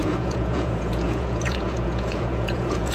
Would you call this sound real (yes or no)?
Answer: no